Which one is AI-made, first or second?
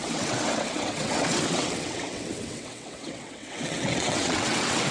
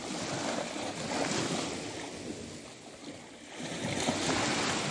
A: first